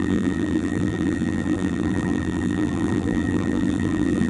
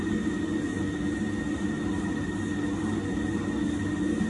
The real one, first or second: second